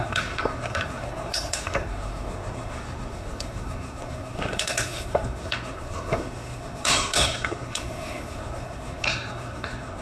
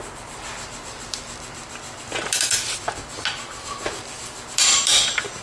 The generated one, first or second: first